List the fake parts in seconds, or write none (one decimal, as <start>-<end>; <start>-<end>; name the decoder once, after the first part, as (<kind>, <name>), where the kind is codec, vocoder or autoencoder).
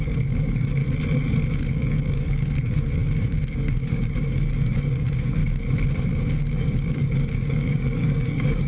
0.0-0.8 (codec, DAC); 1.7-5.4; 6.1-8.7